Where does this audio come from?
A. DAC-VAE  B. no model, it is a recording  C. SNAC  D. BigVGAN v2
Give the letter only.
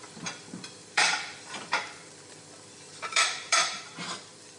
D